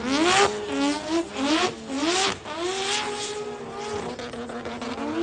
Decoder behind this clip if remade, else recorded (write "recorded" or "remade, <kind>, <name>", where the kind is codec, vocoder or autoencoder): recorded